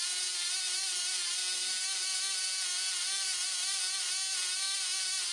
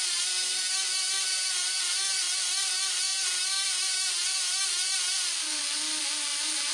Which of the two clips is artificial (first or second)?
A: second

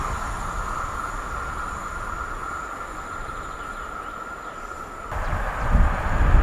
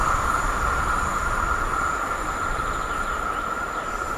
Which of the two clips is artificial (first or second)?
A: second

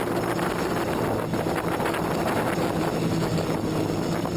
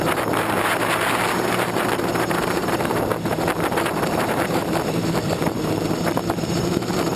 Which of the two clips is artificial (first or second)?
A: second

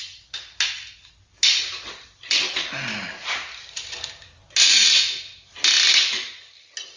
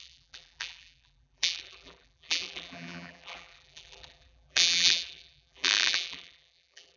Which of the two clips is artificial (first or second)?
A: second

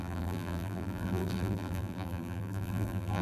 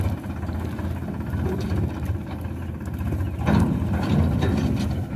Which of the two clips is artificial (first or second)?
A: first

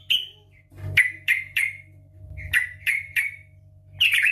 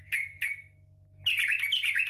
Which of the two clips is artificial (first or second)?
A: first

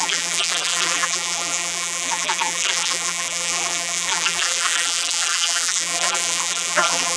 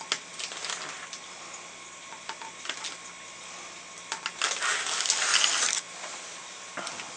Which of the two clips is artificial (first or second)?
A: first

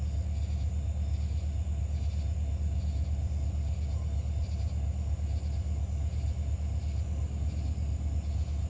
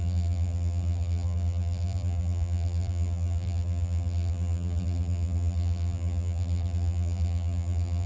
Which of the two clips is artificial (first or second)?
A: second